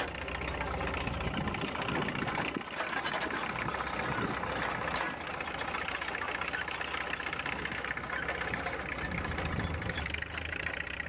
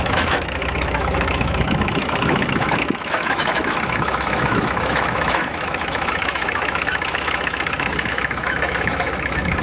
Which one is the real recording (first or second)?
first